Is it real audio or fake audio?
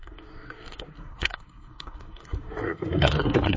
fake